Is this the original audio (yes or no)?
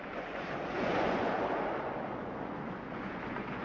no